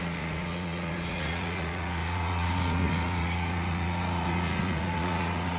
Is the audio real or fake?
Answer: fake